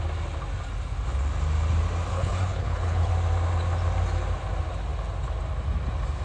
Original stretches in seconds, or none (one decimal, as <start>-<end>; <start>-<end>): 0.0-2.1; 3.1-6.2